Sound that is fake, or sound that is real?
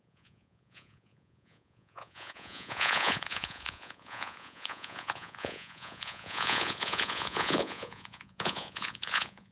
fake